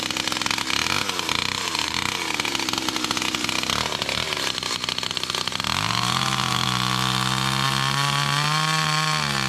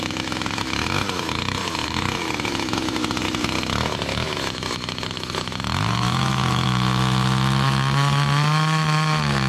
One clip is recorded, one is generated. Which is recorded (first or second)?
first